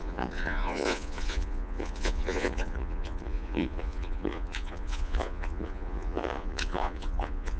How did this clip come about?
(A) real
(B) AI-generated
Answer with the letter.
B